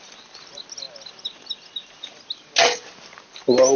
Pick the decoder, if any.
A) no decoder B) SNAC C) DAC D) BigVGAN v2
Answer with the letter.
A